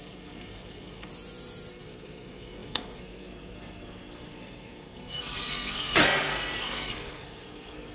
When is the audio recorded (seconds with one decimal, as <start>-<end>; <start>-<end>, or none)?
1.1-1.7